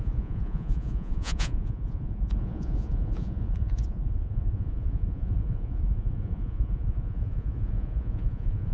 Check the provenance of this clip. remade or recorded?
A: remade